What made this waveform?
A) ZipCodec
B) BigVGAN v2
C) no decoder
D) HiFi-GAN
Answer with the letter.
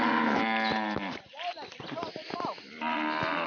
C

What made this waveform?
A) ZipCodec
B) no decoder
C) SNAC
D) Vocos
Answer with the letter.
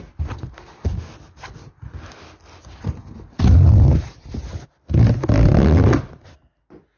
B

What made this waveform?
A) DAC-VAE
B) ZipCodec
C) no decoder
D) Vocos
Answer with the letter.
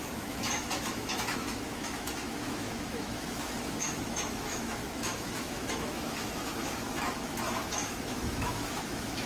A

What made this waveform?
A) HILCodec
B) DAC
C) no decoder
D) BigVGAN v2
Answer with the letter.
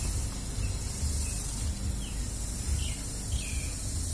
C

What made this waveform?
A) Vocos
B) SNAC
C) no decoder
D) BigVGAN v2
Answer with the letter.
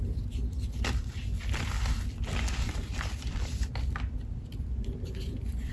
C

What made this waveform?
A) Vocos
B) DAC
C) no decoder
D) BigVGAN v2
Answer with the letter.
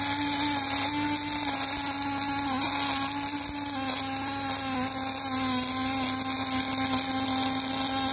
C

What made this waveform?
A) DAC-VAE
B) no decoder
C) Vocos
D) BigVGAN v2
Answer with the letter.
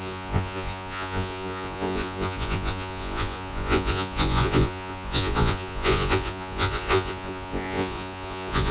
C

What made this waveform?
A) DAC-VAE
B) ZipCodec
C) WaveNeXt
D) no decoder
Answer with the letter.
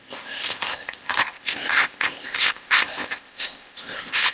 B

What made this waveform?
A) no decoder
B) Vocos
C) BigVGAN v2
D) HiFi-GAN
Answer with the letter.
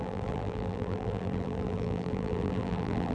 C